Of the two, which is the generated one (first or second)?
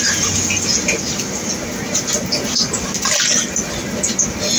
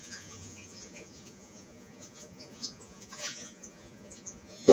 second